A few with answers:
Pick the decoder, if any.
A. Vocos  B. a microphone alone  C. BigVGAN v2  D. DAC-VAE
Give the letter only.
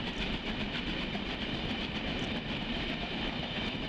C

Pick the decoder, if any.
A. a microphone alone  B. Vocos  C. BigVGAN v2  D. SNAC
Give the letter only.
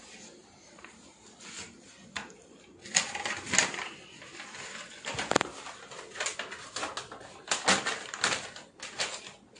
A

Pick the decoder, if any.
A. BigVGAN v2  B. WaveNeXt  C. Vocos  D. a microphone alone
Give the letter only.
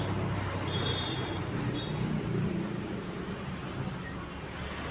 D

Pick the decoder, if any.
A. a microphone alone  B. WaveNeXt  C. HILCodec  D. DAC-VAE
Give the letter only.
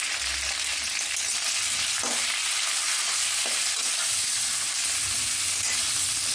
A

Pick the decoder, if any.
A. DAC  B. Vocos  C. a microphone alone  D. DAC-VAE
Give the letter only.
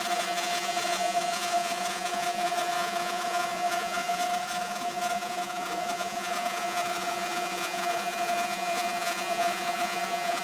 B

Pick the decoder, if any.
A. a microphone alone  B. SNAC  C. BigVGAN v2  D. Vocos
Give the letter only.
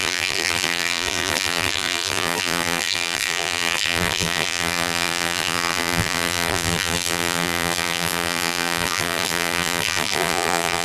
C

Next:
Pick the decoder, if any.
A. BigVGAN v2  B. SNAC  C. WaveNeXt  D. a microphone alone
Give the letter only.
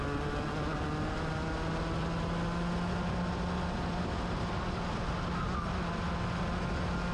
D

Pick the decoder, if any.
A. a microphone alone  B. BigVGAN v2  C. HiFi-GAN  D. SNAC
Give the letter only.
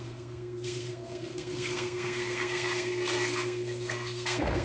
D